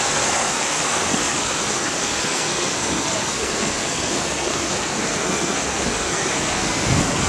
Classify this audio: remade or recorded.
remade